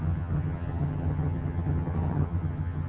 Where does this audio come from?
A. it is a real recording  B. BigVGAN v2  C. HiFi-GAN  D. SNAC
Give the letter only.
C